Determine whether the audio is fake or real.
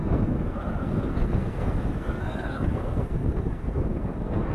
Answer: fake